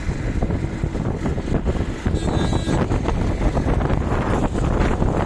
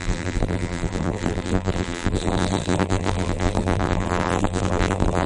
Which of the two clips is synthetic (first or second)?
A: second